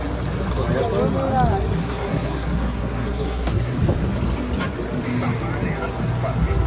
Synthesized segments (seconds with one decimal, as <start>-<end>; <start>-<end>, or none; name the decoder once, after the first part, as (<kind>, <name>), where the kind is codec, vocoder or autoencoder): 1.8-3.8 (codec, SNAC)